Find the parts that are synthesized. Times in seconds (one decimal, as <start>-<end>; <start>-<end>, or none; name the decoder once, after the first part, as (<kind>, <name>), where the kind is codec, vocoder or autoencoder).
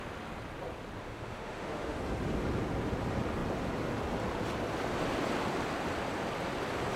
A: 1.0-2.0 (autoencoder, DAC-VAE)